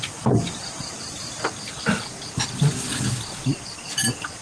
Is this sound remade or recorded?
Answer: recorded